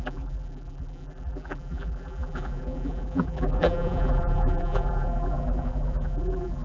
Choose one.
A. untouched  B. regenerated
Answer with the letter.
B